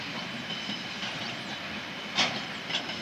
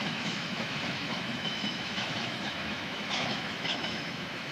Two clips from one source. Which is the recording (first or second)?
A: first